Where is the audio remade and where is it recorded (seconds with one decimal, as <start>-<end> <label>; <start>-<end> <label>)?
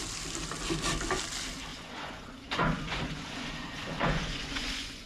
0.0-1.7 recorded; 1.7-5.1 remade